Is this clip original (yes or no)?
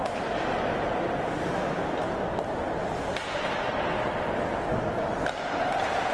yes